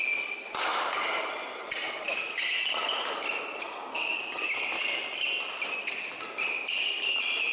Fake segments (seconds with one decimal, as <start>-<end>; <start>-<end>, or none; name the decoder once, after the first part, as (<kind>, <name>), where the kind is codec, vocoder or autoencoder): none